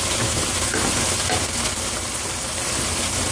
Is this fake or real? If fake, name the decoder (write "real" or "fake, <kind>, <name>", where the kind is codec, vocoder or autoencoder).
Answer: real